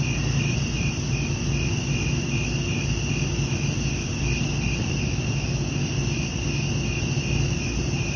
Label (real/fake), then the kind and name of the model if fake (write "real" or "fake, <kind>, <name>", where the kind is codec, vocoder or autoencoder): real